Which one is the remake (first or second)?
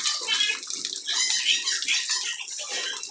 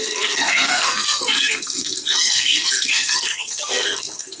second